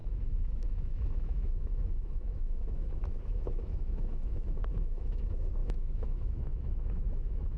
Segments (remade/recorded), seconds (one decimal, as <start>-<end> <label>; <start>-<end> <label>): 0.0-7.6 remade